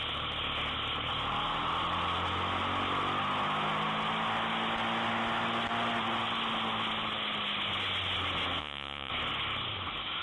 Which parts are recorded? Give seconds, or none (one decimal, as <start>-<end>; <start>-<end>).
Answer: 0.0-8.6; 9.1-10.2